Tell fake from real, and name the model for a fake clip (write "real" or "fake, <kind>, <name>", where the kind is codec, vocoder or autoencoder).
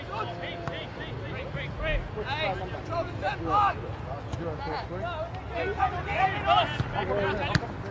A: real